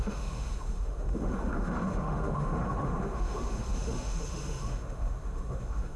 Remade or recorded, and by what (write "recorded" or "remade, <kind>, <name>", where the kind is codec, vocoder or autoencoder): remade, autoencoder, DAC-VAE